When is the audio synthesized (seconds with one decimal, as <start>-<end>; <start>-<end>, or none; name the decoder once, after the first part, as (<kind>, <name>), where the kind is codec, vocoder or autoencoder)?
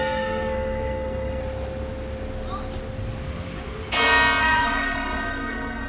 0.0-1.4 (codec, SNAC); 4.4-5.9